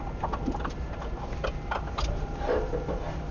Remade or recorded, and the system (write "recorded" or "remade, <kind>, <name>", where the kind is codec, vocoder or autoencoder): recorded